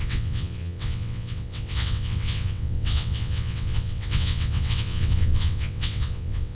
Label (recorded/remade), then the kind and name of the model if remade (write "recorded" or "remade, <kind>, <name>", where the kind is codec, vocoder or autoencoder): remade, vocoder, WaveNeXt